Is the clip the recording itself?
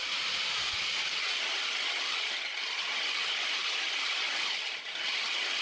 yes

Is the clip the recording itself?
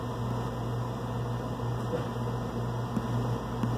yes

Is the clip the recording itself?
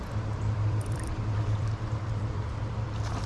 no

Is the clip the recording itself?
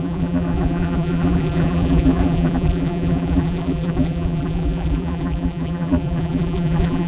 no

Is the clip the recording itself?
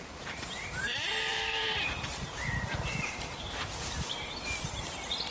no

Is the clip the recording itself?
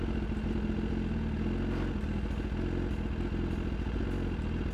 yes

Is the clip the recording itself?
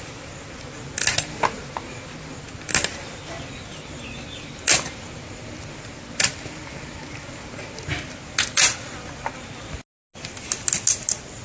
yes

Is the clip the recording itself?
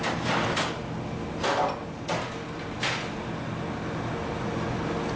yes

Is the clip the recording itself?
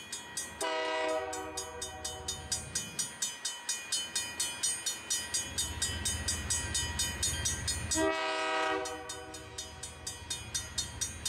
yes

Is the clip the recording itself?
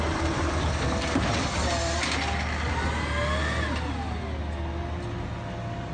yes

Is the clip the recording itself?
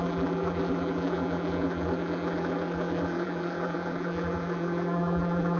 no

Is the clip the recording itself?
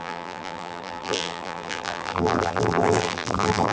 no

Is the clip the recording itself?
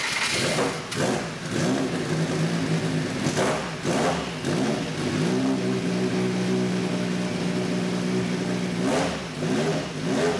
yes